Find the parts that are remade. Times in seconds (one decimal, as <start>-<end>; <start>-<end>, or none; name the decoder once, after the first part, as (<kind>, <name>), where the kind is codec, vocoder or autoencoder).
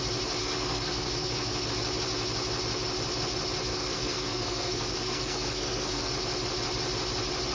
0.4-1.7 (codec, SNAC); 3.7-6.1